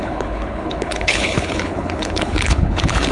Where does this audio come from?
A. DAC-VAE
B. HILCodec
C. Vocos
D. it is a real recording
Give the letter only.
B